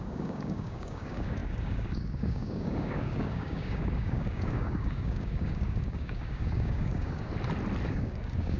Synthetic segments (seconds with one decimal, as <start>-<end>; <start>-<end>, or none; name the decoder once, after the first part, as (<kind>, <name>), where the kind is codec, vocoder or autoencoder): 0.0-7.3 (codec, DAC); 7.9-8.6